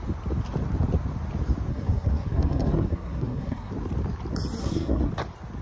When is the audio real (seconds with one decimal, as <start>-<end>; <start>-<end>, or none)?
0.0-1.7; 3.7-4.6; 5.1-5.6